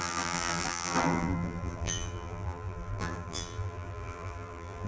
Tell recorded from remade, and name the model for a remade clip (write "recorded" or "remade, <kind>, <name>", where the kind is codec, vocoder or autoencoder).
remade, vocoder, BigVGAN v2